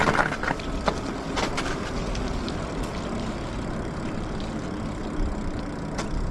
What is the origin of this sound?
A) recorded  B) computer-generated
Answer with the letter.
A